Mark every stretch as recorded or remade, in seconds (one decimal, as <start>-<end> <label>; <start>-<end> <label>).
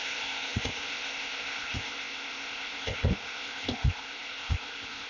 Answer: 0.0-5.1 remade